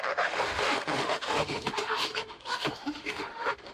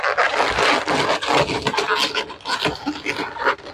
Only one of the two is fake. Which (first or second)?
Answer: first